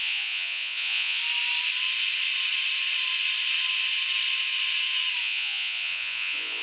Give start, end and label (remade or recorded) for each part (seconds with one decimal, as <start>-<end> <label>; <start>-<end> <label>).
0.0-1.2 remade; 1.2-5.2 recorded; 5.2-6.6 remade

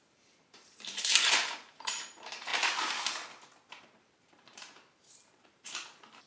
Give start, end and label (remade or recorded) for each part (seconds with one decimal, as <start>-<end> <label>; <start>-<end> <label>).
0.0-2.5 remade; 2.5-3.8 recorded; 3.8-6.3 remade

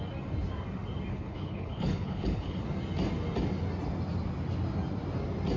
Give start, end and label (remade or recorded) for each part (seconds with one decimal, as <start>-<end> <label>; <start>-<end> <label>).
0.0-1.1 recorded; 1.1-2.6 remade; 2.6-5.6 recorded

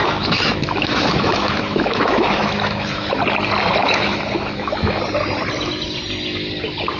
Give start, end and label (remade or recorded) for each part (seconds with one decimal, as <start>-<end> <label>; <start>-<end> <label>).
0.0-3.2 remade; 3.2-3.8 recorded; 3.8-5.0 remade; 5.0-7.0 recorded

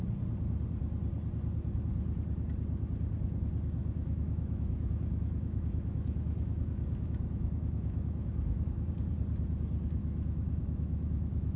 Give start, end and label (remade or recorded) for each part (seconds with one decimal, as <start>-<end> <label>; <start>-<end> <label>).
0.0-3.8 recorded; 3.8-8.9 remade; 8.9-10.0 recorded; 10.0-11.6 remade